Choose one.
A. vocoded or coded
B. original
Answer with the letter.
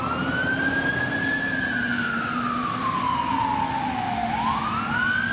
B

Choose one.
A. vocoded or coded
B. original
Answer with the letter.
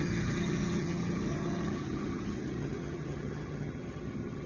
A